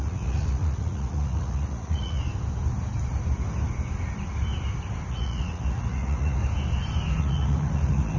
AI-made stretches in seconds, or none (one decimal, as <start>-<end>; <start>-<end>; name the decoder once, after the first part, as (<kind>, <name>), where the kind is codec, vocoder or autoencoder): 0.0-2.2 (vocoder, Vocos); 5.1-6.4; 7.2-8.2

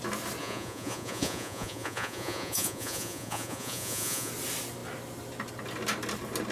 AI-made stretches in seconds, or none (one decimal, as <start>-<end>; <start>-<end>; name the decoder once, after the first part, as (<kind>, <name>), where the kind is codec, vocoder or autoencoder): 0.4-4.3 (vocoder, Vocos)